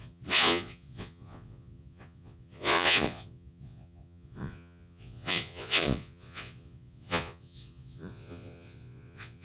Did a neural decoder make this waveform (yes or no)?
yes